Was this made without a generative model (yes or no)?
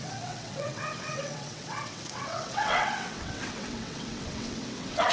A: no